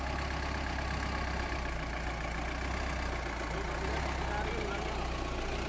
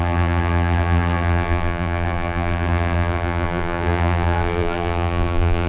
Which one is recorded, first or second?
first